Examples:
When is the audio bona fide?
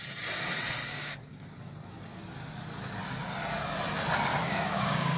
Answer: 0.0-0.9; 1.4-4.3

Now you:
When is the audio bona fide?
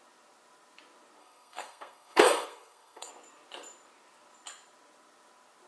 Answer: 0.0-1.2; 3.1-5.7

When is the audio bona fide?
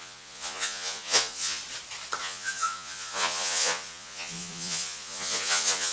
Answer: 1.6-2.2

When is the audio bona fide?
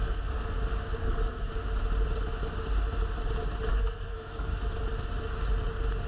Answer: 0.4-1.0; 1.5-3.7; 4.5-6.1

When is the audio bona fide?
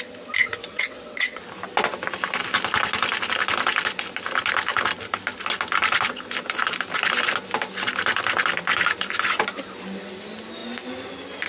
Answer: 0.0-0.4; 1.4-11.5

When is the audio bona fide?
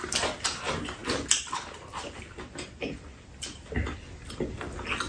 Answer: 0.0-5.1